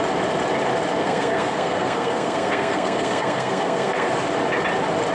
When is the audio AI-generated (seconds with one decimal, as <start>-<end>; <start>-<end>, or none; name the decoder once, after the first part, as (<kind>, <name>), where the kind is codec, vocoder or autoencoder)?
1.0-4.1 (codec, SNAC)